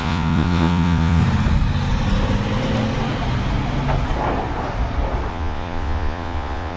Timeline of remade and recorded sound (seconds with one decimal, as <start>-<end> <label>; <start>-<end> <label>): 0.0-1.2 remade; 1.2-5.3 recorded; 5.3-6.8 remade